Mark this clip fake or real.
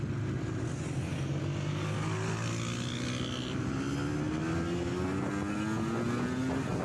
real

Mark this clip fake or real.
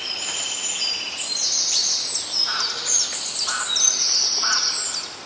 real